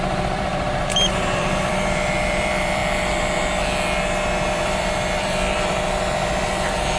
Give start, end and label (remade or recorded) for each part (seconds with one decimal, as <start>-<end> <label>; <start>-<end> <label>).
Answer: 0.0-2.8 remade; 2.8-4.5 recorded; 4.5-7.0 remade